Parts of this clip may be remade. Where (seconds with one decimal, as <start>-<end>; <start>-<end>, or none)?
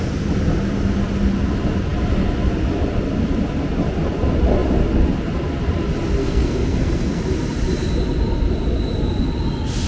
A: 6.2-7.2